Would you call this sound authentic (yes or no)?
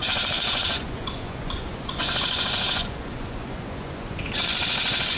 no